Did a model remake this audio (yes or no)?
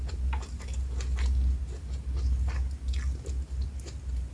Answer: no